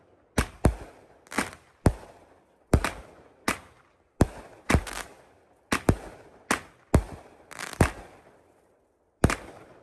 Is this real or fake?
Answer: real